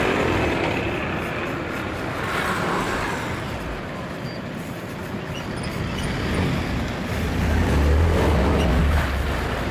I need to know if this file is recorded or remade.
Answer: recorded